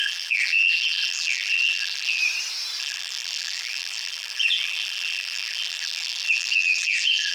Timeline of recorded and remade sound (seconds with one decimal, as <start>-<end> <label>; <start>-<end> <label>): 0.0-2.2 remade; 2.2-2.8 recorded; 2.8-7.3 remade